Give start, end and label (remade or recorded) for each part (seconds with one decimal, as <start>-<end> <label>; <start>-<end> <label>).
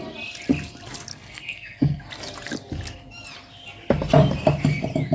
0.0-1.1 recorded; 1.1-2.0 remade; 2.0-5.1 recorded